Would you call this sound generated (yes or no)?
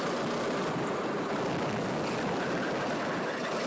no